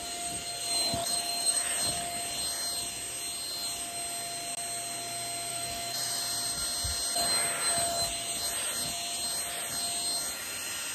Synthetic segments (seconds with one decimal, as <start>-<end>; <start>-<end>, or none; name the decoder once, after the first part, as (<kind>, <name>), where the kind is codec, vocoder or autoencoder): 1.0-1.7 (autoencoder, DAC-VAE); 5.5-6.2